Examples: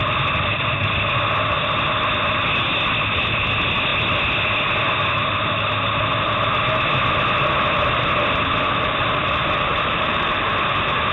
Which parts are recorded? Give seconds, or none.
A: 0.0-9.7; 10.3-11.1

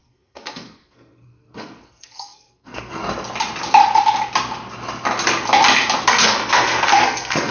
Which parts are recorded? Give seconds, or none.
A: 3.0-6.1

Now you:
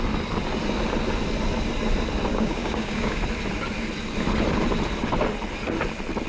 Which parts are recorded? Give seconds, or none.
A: 0.0-2.3; 3.2-6.3

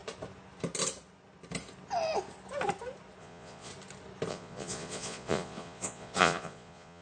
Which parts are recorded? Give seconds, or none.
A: 0.0-3.2; 3.7-4.3

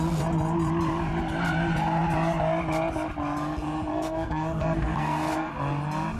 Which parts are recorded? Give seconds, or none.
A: 0.0-3.9; 5.5-6.2